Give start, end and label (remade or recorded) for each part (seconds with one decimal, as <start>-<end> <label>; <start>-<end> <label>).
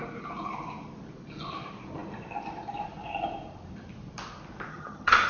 0.0-4.7 recorded; 4.7-5.3 remade